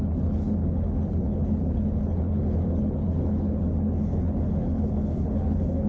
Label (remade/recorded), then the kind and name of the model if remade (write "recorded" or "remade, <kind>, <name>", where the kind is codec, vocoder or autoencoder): remade, codec, HILCodec